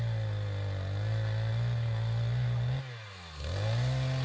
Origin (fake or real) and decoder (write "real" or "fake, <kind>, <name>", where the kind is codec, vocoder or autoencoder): real